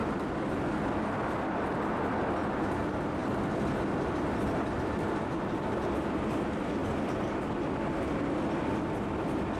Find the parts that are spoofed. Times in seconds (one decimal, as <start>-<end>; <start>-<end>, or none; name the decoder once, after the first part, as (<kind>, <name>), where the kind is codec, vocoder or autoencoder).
0.0-0.5 (vocoder, BigVGAN v2); 3.2-4.8; 6.8-7.9